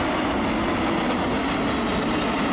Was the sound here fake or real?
real